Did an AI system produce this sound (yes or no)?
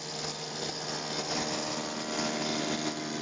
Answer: no